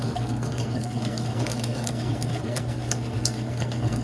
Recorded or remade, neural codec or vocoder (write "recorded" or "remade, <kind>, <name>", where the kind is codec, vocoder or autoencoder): remade, codec, SNAC